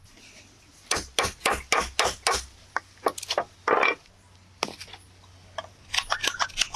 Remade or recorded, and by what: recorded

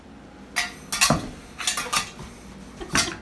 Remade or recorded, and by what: recorded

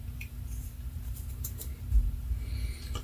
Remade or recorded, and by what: remade, vocoder, BigVGAN v2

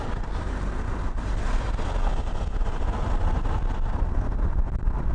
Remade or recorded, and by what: recorded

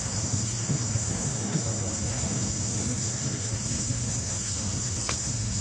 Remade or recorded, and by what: remade, codec, SNAC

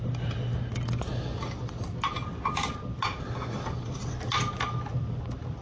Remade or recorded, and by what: recorded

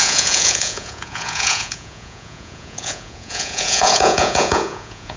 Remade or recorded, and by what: remade, vocoder, Vocos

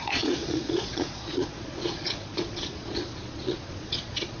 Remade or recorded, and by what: remade, vocoder, Vocos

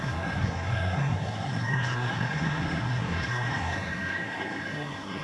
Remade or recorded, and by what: remade, codec, SNAC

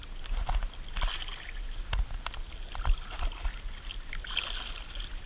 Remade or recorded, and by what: recorded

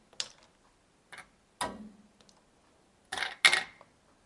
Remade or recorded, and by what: recorded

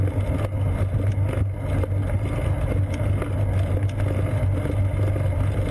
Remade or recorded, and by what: recorded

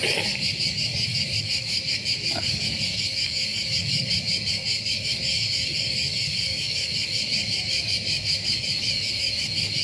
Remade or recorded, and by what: remade, codec, DAC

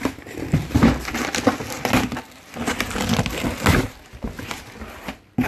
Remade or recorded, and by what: recorded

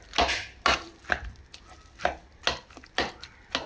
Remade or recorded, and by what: recorded